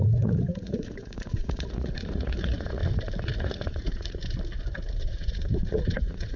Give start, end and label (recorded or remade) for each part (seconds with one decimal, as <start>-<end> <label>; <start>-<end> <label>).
0.0-2.8 remade; 2.8-3.4 recorded; 3.4-4.2 remade; 4.2-5.0 recorded; 5.0-6.4 remade